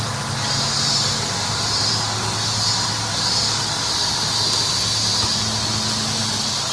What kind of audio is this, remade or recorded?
recorded